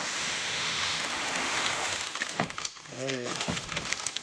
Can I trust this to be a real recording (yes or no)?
no